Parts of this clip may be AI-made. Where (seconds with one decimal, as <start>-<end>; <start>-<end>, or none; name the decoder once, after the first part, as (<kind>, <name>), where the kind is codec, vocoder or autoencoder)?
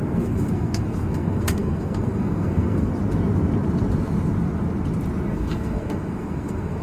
0.0-2.9 (codec, SNAC); 5.3-6.8